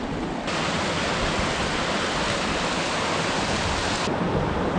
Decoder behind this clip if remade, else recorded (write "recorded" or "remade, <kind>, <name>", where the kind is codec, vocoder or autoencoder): recorded